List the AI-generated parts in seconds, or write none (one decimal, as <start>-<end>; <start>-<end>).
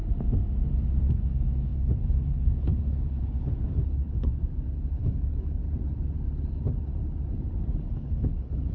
1.1-4.3; 4.9-5.6; 7.8-8.7